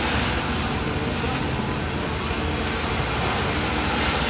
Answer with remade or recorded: recorded